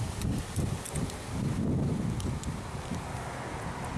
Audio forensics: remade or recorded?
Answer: recorded